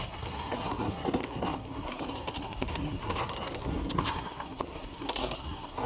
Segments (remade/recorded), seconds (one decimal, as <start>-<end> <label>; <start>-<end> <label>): 0.0-5.9 remade